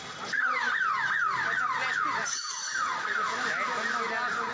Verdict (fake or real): real